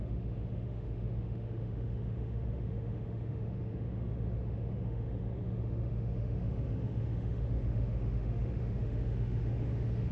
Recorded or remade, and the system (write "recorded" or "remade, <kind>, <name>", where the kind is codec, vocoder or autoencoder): remade, autoencoder, DAC-VAE